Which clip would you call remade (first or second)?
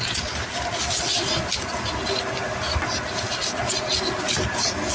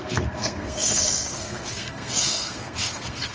second